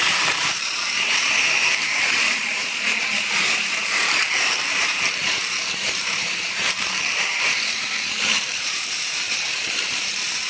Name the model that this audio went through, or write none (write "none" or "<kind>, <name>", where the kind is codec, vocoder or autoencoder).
vocoder, BigVGAN v2